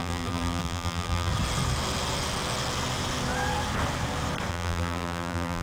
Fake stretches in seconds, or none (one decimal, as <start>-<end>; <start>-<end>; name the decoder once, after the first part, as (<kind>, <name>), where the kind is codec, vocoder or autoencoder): 0.0-1.3 (vocoder, BigVGAN v2); 4.5-5.6